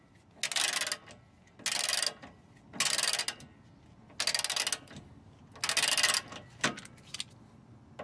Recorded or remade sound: recorded